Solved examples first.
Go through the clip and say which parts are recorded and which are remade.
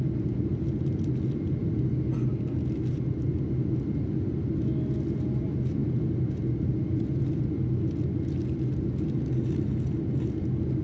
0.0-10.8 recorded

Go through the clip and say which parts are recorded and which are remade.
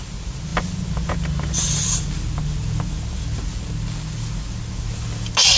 0.0-5.6 recorded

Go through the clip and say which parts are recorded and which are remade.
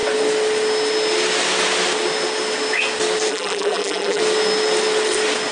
0.0-3.3 recorded; 3.3-4.2 remade; 4.2-5.5 recorded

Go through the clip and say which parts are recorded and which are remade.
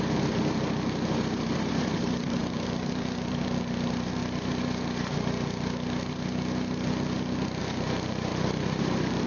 0.0-4.2 remade; 4.2-7.6 recorded; 7.6-8.3 remade; 8.3-8.8 recorded; 8.8-9.3 remade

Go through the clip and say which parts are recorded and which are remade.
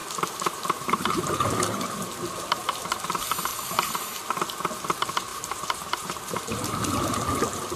0.0-1.6 remade; 1.6-3.5 recorded; 3.5-4.2 remade; 4.2-5.3 recorded; 5.3-6.4 remade; 6.4-7.8 recorded